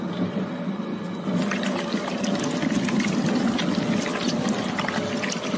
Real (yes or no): yes